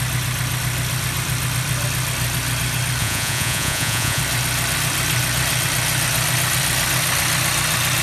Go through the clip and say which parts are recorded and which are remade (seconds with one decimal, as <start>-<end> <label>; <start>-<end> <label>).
0.0-3.0 recorded; 3.0-4.2 remade; 4.2-8.0 recorded